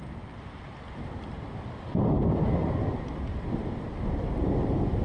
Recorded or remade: recorded